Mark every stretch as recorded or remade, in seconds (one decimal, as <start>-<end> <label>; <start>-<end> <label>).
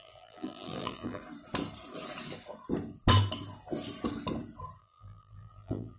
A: 0.0-1.2 remade; 1.2-4.8 recorded; 4.8-6.0 remade